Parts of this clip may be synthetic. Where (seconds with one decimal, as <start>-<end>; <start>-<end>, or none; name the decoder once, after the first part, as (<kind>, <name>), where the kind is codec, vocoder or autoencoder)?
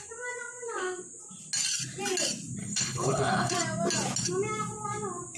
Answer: 2.6-3.5 (codec, HILCodec)